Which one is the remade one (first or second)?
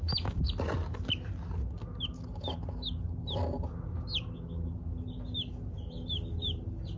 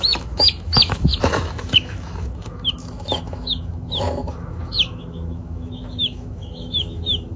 second